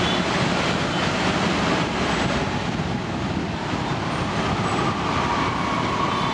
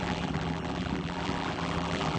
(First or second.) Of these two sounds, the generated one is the second